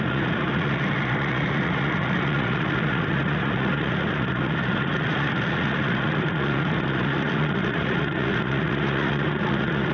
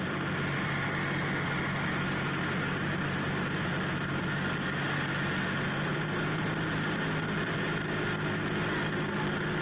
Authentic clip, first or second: second